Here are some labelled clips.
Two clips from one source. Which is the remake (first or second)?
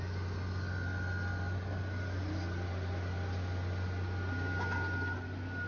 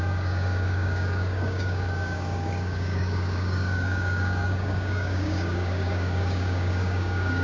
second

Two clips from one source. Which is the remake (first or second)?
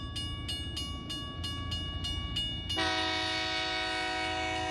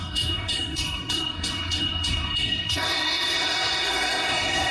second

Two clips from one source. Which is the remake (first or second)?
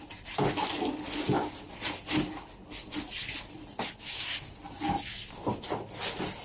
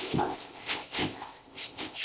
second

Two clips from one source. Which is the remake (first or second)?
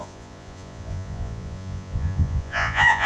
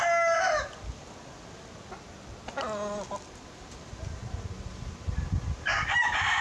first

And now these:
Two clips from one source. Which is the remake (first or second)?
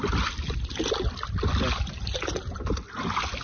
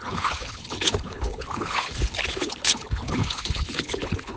second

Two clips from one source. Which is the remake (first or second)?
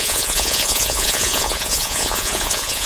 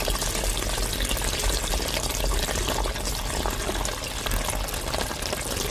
first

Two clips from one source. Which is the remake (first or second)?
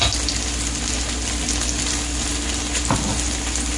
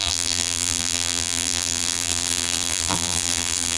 second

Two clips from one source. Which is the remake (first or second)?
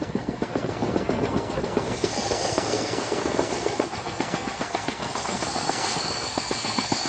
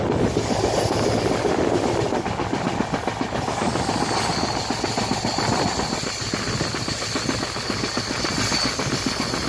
first